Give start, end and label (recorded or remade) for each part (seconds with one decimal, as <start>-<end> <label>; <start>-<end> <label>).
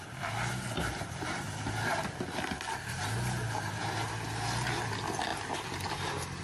0.0-0.9 recorded; 0.9-1.9 remade; 1.9-6.4 recorded